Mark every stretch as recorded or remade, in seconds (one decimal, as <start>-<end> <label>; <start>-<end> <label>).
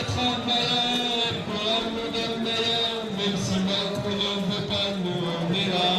0.0-3.8 recorded; 3.8-4.5 remade; 4.5-6.0 recorded